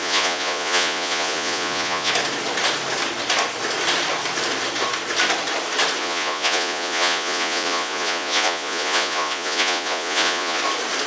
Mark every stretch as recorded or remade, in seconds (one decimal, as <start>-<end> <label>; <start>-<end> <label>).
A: 0.0-2.1 remade; 2.1-6.0 recorded; 6.0-10.6 remade; 10.6-11.1 recorded

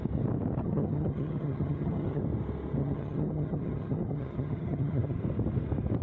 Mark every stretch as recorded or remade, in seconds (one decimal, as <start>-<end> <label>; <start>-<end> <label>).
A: 0.0-0.6 recorded; 0.6-2.2 remade; 2.2-2.8 recorded; 2.8-5.2 remade; 5.2-6.0 recorded

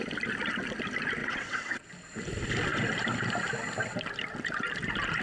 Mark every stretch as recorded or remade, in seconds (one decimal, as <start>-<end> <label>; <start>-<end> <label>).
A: 0.0-1.2 recorded; 1.2-1.8 remade; 1.8-5.2 recorded

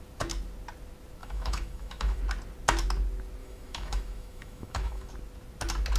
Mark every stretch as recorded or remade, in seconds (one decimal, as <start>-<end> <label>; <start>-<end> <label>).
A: 0.0-1.2 recorded; 1.2-2.2 remade; 2.2-3.4 recorded; 3.4-5.1 remade; 5.1-6.0 recorded

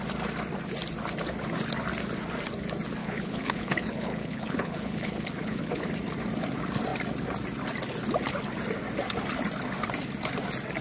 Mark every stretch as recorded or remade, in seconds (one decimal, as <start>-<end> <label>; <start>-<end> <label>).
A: 0.0-3.0 recorded; 3.0-5.9 remade; 5.9-10.8 recorded

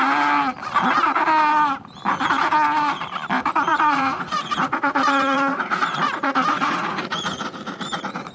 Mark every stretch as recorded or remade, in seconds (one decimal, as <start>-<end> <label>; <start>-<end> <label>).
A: 0.0-3.7 recorded; 3.7-8.3 remade

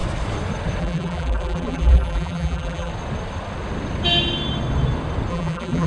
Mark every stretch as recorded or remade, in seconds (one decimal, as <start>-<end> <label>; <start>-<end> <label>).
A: 0.0-0.8 recorded; 0.8-2.9 remade; 2.9-5.3 recorded; 5.3-5.9 remade